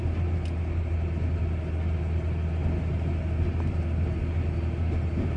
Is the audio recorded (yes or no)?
yes